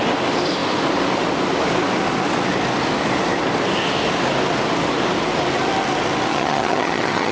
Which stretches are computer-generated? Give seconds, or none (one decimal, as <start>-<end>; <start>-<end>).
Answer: 6.3-7.3